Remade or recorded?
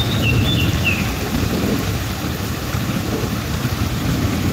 remade